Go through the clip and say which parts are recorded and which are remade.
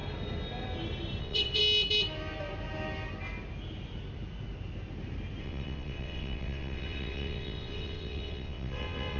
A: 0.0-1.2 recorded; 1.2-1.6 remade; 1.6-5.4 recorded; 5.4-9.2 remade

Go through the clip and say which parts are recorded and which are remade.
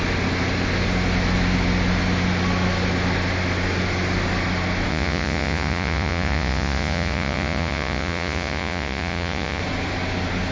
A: 0.0-4.9 recorded; 4.9-9.6 remade; 9.6-10.5 recorded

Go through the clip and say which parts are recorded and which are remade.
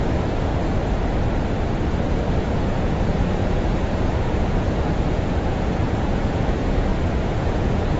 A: 0.0-0.5 remade; 0.5-2.4 recorded; 2.4-6.9 remade; 6.9-7.4 recorded; 7.4-8.0 remade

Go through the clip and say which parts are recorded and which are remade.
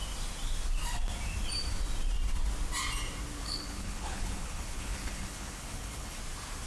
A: 0.0-3.4 recorded; 3.4-6.2 remade; 6.2-6.7 recorded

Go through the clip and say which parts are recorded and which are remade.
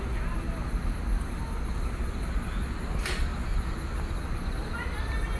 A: 0.0-5.4 recorded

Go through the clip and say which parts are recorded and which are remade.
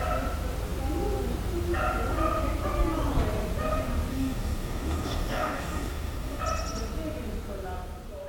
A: 0.0-4.1 recorded; 4.1-6.4 remade; 6.4-8.3 recorded